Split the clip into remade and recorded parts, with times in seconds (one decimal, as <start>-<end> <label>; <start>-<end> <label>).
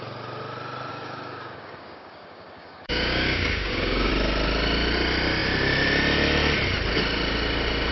0.0-0.9 recorded; 0.9-4.1 remade; 4.1-7.9 recorded